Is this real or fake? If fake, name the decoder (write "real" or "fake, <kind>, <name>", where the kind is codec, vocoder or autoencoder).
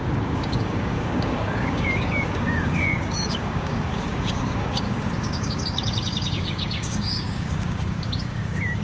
fake, codec, DAC